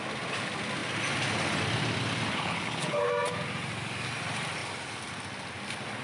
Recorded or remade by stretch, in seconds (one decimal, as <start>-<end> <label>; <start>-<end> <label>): 0.0-2.3 recorded; 2.3-3.1 remade; 3.1-6.0 recorded